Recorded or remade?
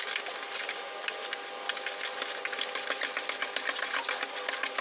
recorded